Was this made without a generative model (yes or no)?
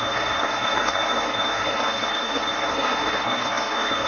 no